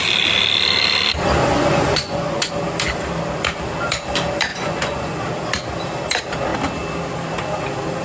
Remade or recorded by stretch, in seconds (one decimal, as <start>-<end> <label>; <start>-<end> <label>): 0.0-1.4 recorded; 1.4-2.5 remade; 2.5-4.5 recorded; 4.5-5.2 remade; 5.2-8.0 recorded